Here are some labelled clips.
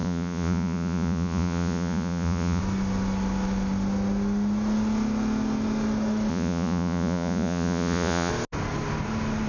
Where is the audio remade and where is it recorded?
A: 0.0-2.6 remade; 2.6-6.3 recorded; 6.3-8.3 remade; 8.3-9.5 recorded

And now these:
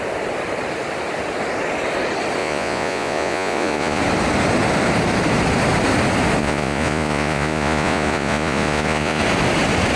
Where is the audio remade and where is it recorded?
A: 0.0-2.4 recorded; 2.4-4.0 remade; 4.0-6.4 recorded; 6.4-9.2 remade; 9.2-10.0 recorded

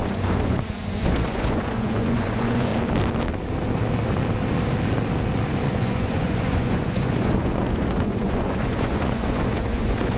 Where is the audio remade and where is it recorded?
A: 0.0-2.7 remade; 2.7-5.6 recorded; 5.6-10.2 remade

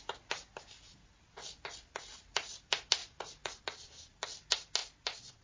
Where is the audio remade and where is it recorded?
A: 0.0-3.0 recorded; 3.0-3.6 remade; 3.6-5.4 recorded

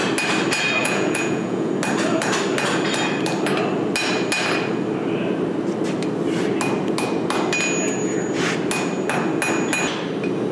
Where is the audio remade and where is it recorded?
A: 0.0-0.8 recorded; 0.8-1.7 remade; 1.7-10.5 recorded